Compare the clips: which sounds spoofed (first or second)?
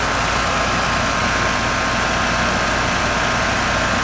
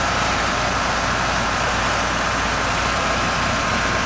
second